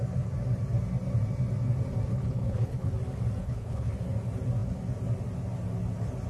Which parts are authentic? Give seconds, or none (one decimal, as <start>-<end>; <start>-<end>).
0.0-2.1; 2.9-3.4; 3.9-6.3